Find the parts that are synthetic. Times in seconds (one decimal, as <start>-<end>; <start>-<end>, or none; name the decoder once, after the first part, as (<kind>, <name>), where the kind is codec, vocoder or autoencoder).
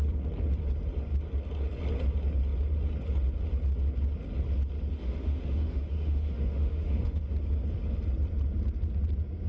4.9-7.2 (autoencoder, DAC-VAE)